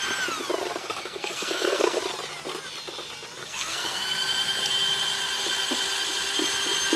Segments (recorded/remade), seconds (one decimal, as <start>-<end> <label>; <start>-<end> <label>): 0.0-0.8 recorded; 0.8-2.0 remade; 2.0-3.4 recorded; 3.4-4.0 remade; 4.0-7.0 recorded